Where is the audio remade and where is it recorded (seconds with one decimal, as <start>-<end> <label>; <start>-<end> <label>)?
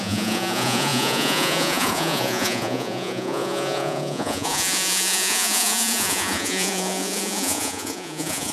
0.0-8.5 remade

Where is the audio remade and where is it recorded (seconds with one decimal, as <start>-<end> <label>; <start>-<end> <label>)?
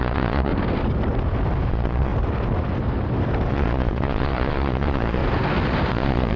0.0-0.5 remade; 0.5-1.7 recorded; 1.7-2.1 remade; 2.1-3.5 recorded; 3.5-5.2 remade; 5.2-5.9 recorded; 5.9-6.4 remade